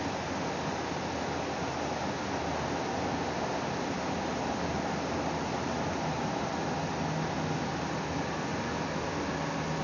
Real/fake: real